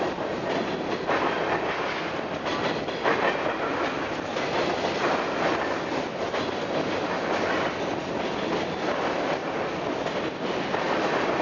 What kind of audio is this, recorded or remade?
recorded